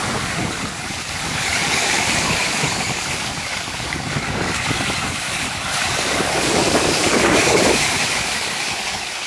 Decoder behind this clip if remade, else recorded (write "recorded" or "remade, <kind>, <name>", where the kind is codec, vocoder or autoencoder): remade, codec, DAC